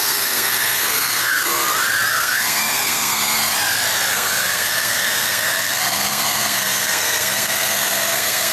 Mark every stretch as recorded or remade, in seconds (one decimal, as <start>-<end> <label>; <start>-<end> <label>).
0.0-1.5 remade; 1.5-2.1 recorded; 2.1-3.5 remade; 3.5-4.1 recorded; 4.1-8.5 remade